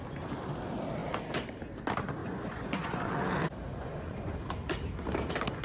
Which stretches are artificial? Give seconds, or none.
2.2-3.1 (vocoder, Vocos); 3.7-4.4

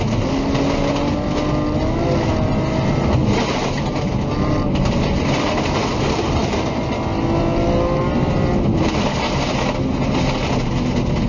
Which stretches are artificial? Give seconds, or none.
none

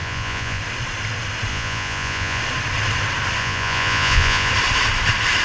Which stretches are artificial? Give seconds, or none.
0.0-0.6 (vocoder, Vocos); 1.5-2.4; 3.4-4.5